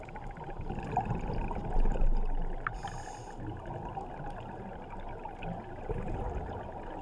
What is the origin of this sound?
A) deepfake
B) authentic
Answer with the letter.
B